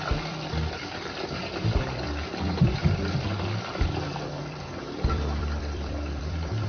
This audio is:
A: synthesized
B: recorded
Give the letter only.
A